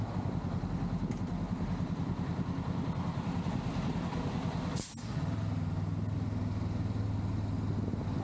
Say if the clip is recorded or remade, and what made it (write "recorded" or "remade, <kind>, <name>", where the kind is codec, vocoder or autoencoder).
recorded